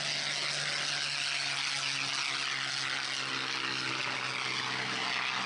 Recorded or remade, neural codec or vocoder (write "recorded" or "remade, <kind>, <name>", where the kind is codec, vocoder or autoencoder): recorded